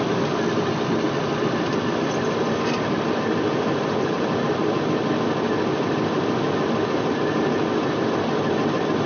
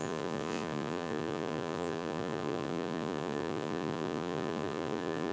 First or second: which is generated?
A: second